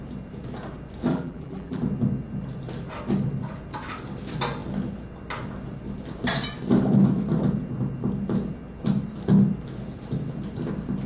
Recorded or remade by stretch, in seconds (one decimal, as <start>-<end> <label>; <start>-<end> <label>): 0.0-1.1 recorded; 1.1-1.8 remade; 1.8-11.1 recorded